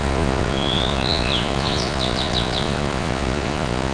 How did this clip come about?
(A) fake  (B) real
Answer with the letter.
A